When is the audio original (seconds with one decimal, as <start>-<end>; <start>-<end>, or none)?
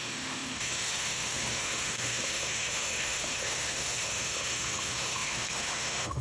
none